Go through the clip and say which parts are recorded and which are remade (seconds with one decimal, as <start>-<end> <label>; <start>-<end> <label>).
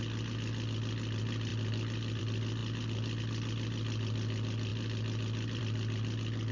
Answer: 0.0-6.5 recorded